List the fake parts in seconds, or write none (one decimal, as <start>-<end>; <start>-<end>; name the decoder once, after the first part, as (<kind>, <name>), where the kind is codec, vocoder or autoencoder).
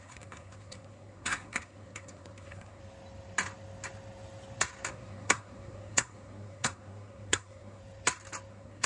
0.0-2.8 (codec, SNAC); 4.9-7.8; 8.5-8.9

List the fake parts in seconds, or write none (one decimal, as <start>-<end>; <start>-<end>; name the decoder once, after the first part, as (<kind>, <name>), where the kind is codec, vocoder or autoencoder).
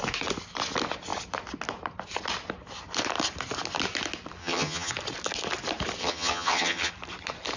4.4-4.9 (vocoder, HiFi-GAN); 6.0-6.9